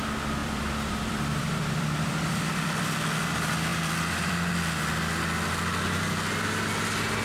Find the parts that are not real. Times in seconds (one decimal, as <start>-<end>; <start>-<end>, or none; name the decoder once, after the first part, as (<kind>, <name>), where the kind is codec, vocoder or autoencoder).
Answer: 0.4-2.4 (vocoder, BigVGAN v2); 3.7-4.5